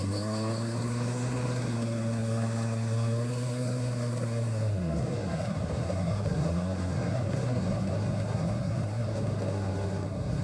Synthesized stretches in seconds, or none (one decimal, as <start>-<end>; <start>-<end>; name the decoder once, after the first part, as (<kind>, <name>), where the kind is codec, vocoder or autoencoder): 0.0-10.4 (codec, SNAC)

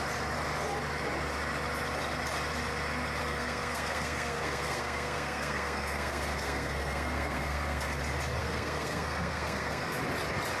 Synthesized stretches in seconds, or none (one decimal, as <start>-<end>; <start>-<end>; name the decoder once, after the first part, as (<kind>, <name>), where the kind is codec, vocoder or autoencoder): 3.2-8.0 (codec, SNAC); 8.4-10.0

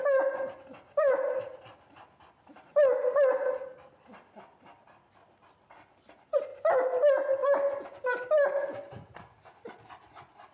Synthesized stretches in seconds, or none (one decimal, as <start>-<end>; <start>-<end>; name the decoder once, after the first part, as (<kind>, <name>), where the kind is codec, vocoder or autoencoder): none

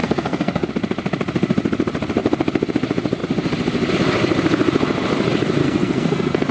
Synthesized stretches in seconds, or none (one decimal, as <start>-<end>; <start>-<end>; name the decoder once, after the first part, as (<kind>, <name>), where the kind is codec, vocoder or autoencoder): 0.0-0.7 (codec, SNAC); 5.6-6.5